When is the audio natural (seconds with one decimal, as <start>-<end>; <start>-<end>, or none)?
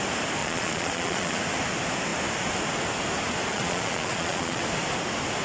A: 0.0-0.4; 1.4-3.5; 4.6-5.4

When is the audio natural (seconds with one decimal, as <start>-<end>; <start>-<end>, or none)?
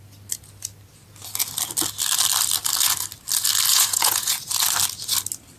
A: 0.0-3.7; 4.3-5.6